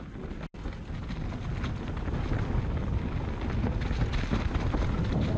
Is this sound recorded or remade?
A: recorded